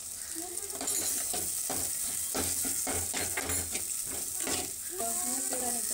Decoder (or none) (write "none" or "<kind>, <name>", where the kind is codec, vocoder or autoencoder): none